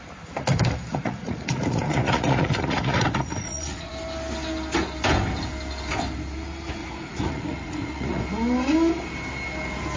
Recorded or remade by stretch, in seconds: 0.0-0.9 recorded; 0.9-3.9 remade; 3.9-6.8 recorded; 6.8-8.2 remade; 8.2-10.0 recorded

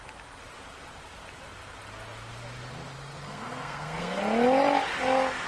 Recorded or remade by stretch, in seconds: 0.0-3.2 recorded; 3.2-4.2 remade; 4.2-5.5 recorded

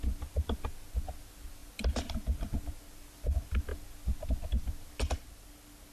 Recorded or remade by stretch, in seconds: 0.0-5.9 recorded

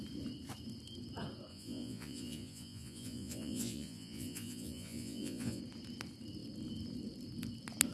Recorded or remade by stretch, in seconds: 0.0-1.5 recorded; 1.5-5.6 remade; 5.6-7.9 recorded